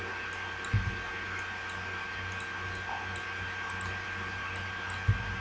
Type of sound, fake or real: real